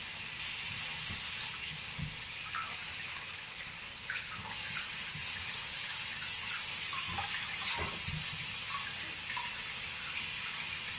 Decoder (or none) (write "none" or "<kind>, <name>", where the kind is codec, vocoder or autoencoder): none